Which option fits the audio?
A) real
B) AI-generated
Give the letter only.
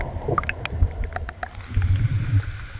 A